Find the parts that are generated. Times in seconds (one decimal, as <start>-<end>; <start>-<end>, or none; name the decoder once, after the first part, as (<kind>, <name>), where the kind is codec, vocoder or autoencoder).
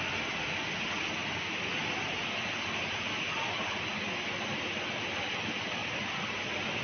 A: none